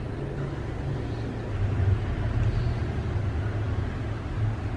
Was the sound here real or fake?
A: real